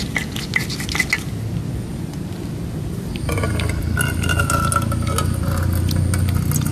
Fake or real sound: real